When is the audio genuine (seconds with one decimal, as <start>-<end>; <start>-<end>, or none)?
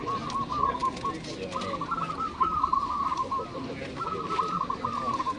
0.0-5.4